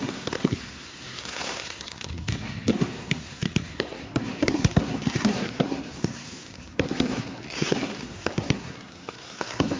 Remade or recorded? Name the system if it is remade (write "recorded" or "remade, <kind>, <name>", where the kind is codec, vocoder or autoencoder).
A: remade, codec, SNAC